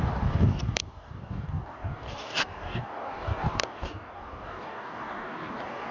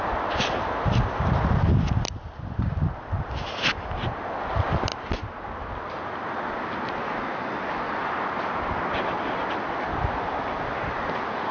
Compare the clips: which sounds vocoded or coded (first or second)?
first